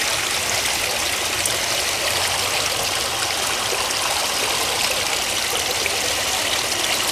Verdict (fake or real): real